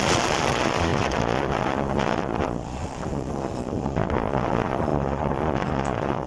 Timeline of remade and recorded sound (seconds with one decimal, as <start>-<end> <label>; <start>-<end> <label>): 0.0-6.3 remade